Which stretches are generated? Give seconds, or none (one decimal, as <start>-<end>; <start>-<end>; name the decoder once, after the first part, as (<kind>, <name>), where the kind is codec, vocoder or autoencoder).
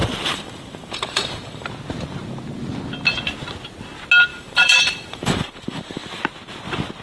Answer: 0.0-1.7 (vocoder, BigVGAN v2); 4.3-6.2